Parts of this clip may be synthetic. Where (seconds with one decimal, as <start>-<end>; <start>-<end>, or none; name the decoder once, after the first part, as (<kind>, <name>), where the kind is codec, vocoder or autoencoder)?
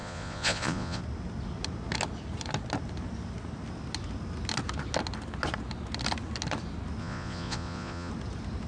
0.0-1.0 (vocoder, Vocos); 7.0-8.1